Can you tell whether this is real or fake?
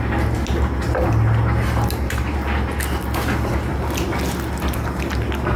real